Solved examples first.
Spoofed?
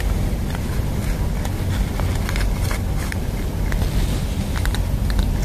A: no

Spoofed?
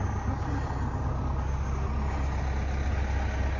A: no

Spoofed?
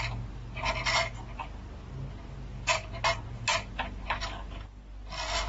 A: no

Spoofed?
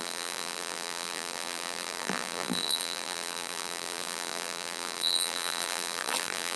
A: yes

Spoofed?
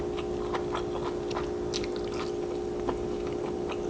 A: no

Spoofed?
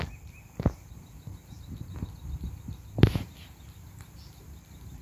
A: no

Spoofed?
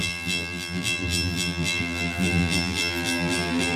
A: yes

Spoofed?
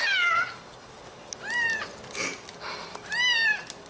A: no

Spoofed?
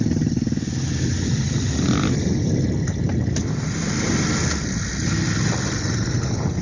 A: no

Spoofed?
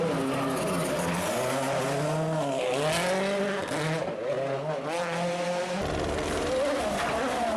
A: no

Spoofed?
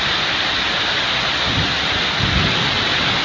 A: no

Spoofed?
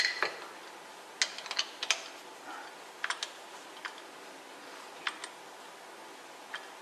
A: no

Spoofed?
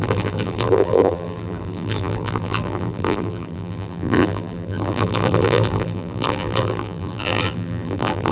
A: yes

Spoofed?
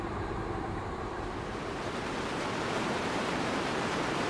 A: yes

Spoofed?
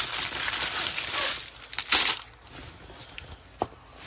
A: no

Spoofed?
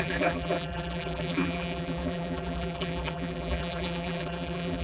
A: yes